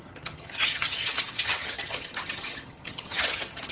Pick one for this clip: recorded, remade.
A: remade